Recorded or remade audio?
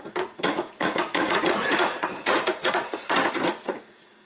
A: remade